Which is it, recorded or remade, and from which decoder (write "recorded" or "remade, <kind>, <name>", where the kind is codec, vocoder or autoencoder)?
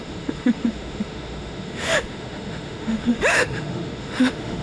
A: remade, autoencoder, DAC-VAE